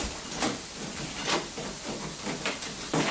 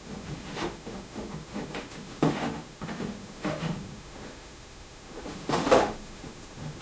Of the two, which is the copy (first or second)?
second